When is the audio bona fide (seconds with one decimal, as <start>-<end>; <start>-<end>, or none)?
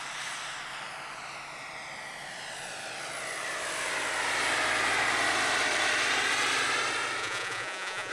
0.0-7.2